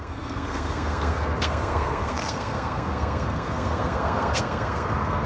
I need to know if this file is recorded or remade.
remade